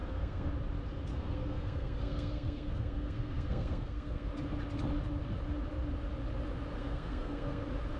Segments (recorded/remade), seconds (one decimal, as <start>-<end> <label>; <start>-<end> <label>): 0.0-0.5 remade; 0.5-1.1 recorded; 1.1-4.3 remade; 4.3-6.8 recorded; 6.8-7.6 remade; 7.6-8.0 recorded